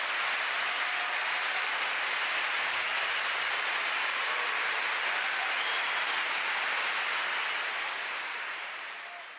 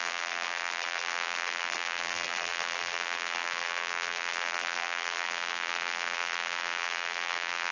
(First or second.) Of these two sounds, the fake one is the second